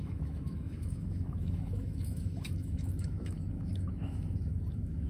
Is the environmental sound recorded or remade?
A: remade